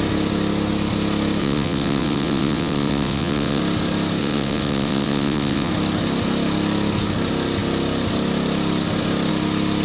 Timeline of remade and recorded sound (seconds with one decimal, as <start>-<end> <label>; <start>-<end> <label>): 0.0-1.4 recorded; 1.4-3.6 remade; 3.6-4.2 recorded; 4.2-5.7 remade; 5.7-9.8 recorded